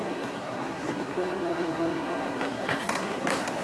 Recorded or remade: remade